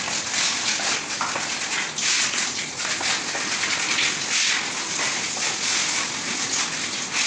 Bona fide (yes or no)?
yes